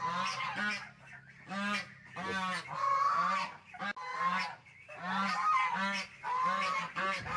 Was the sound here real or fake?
real